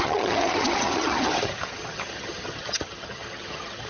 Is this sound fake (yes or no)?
yes